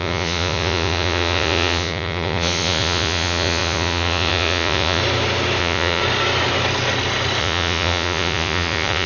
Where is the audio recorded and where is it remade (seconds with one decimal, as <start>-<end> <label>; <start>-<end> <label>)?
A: 0.0-5.0 remade; 5.0-5.6 recorded; 5.6-6.0 remade; 6.0-7.4 recorded; 7.4-9.1 remade

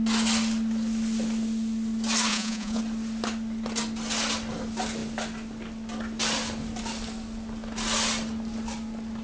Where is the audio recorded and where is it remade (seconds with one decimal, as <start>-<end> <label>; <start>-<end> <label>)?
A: 0.0-2.3 recorded; 2.3-2.8 remade; 2.8-9.2 recorded

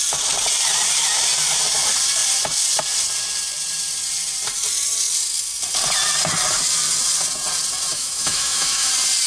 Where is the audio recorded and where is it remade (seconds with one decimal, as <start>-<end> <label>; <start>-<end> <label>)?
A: 0.0-7.9 recorded; 7.9-8.9 remade; 8.9-9.3 recorded

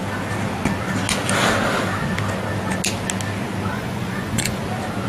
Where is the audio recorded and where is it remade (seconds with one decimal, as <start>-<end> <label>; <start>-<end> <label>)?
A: 0.0-3.7 recorded; 3.7-4.6 remade; 4.6-5.1 recorded

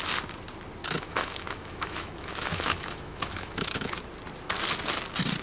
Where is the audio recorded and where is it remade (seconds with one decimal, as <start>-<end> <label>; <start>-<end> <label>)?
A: 0.0-0.8 recorded; 0.8-4.0 remade; 4.0-5.4 recorded